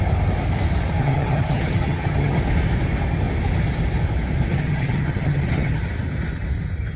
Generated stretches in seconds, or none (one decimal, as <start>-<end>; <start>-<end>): 1.0-2.4; 4.5-5.8